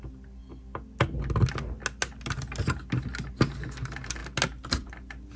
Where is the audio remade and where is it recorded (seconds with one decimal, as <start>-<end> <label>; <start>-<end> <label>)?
0.0-5.4 recorded

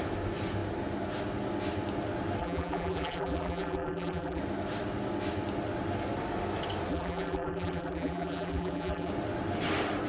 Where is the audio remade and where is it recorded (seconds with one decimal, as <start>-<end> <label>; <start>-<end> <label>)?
0.0-2.4 recorded; 2.4-4.4 remade; 4.4-6.9 recorded; 6.9-9.1 remade; 9.1-10.1 recorded

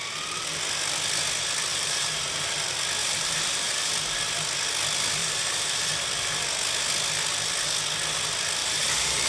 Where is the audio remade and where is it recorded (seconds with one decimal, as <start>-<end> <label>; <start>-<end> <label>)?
0.0-1.7 recorded; 1.7-2.2 remade; 2.2-3.0 recorded; 3.0-3.9 remade; 3.9-5.2 recorded; 5.2-5.9 remade; 5.9-8.6 recorded; 8.6-9.3 remade

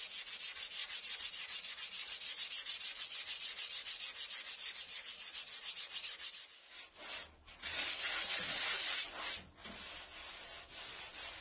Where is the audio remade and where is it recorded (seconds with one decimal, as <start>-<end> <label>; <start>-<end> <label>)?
0.0-0.8 recorded; 0.8-1.7 remade; 1.7-11.4 recorded

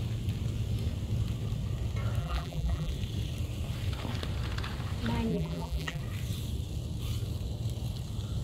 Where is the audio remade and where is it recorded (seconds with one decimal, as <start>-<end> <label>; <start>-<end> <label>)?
0.0-2.2 recorded; 2.2-2.9 remade; 2.9-5.3 recorded; 5.3-6.0 remade; 6.0-8.4 recorded